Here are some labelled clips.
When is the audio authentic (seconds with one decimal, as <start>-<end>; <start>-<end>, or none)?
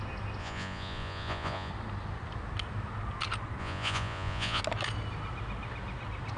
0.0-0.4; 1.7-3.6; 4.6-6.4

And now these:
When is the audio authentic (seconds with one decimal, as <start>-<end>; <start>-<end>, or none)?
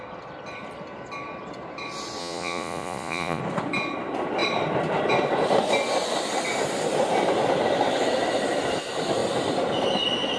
0.0-2.2; 3.4-10.4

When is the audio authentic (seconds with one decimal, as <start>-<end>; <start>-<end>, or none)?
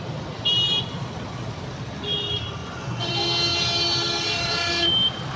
0.0-2.6; 3.1-5.4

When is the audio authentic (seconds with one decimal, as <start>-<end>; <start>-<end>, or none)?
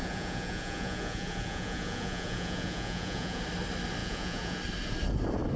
3.4-4.0; 4.6-5.6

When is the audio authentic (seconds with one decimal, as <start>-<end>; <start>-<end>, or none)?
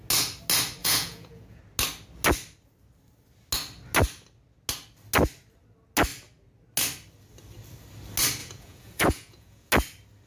0.0-0.8; 1.6-8.4; 9.7-10.3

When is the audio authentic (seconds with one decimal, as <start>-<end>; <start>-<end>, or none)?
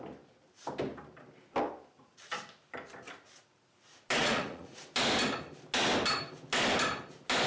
0.0-4.2; 4.8-7.5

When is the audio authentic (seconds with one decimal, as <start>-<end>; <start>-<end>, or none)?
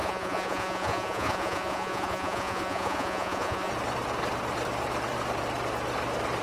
3.7-6.4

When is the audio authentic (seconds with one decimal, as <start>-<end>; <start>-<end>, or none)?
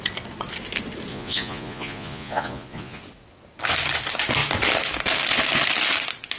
0.0-1.1; 3.0-6.4